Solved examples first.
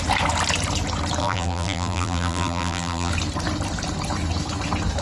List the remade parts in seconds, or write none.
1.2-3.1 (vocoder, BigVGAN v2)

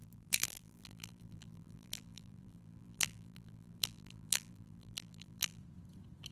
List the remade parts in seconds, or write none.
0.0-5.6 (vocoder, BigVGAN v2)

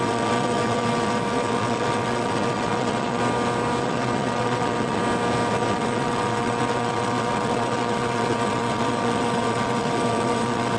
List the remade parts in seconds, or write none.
0.0-3.2 (vocoder, WaveNeXt); 3.8-5.0; 5.5-10.8

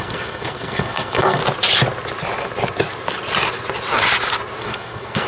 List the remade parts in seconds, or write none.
0.0-1.4 (codec, SNAC); 4.6-5.3

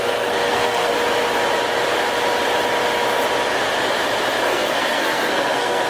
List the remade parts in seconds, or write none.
0.0-0.9 (codec, SNAC); 4.4-5.9